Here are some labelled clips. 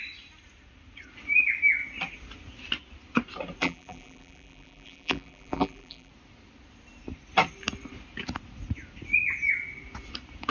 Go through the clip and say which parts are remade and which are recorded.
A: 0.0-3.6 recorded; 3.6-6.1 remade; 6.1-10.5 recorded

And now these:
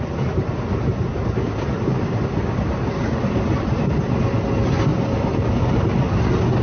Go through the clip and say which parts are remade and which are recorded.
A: 0.0-6.6 recorded

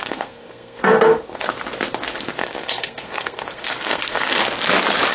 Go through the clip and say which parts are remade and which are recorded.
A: 0.0-1.5 remade; 1.5-2.3 recorded; 2.3-4.4 remade; 4.4-5.1 recorded

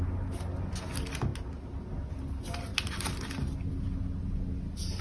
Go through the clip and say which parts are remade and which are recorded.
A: 0.0-5.0 recorded